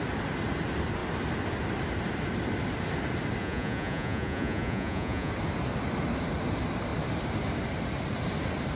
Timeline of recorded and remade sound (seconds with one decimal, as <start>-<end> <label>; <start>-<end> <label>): 0.0-3.4 recorded; 3.4-5.3 remade; 5.3-8.8 recorded